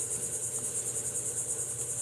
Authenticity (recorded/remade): recorded